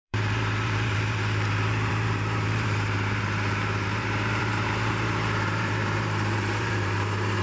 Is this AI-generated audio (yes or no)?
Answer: yes